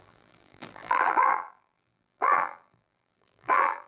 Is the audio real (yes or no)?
no